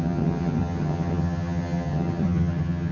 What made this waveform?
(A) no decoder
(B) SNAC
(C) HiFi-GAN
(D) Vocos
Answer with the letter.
C